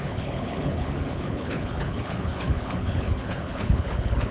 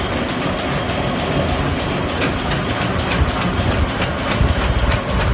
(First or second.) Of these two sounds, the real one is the second